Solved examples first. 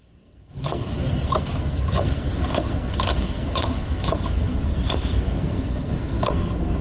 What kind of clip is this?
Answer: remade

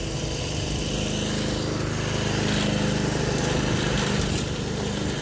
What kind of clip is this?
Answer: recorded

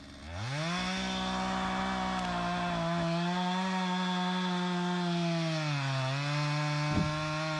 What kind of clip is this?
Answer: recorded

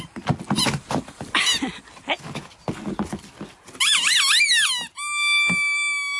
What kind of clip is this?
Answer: recorded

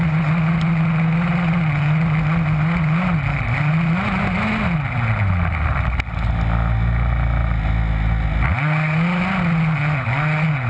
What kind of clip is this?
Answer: recorded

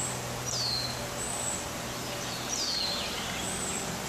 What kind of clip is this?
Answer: recorded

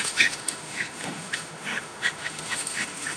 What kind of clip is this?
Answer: remade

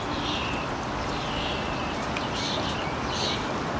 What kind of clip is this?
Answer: recorded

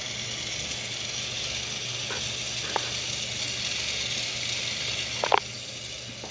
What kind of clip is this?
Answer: recorded